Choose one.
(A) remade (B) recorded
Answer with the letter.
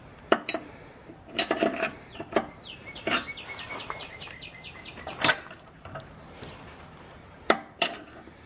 A